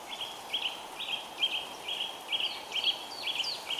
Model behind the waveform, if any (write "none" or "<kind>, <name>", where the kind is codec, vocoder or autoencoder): none